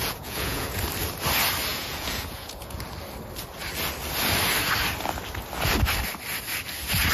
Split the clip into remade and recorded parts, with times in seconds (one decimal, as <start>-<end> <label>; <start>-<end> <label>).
0.0-0.8 remade; 0.8-1.7 recorded; 1.7-2.8 remade; 2.8-7.1 recorded